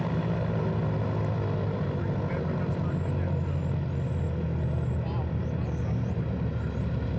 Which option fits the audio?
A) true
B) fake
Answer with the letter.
A